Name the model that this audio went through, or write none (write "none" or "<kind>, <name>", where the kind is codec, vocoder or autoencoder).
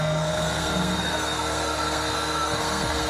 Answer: codec, SNAC